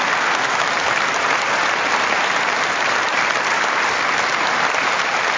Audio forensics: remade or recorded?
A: recorded